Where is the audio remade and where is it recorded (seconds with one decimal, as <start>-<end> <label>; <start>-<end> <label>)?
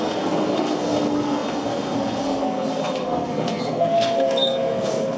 0.0-5.2 remade